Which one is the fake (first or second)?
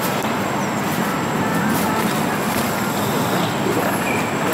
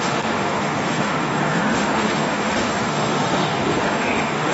second